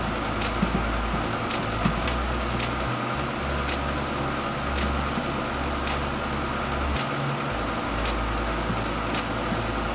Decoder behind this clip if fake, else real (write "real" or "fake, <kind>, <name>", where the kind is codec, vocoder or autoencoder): real